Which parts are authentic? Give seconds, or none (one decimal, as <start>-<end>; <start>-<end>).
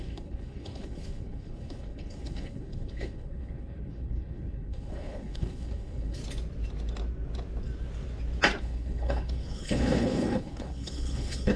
6.2-8.6